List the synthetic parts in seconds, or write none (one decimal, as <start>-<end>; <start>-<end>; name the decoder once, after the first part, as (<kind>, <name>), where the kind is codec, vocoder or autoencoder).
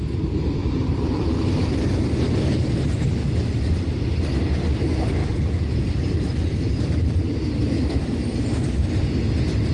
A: 0.6-1.6 (vocoder, BigVGAN v2); 5.2-7.1